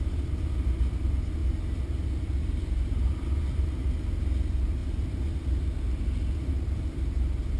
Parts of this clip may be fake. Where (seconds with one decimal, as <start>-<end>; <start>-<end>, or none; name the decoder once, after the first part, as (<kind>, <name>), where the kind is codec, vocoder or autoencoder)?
0.0-1.4 (vocoder, BigVGAN v2); 2.2-7.6